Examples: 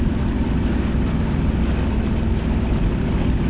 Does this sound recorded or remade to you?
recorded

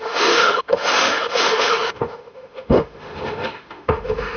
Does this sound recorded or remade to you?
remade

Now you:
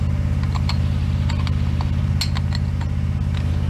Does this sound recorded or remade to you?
recorded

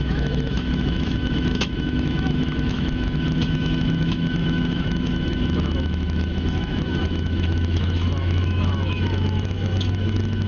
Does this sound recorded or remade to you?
remade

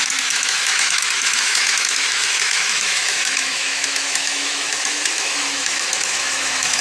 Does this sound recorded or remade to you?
remade